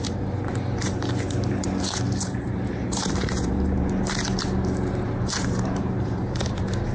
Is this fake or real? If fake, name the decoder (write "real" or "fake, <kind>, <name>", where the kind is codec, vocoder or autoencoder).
fake, vocoder, BigVGAN v2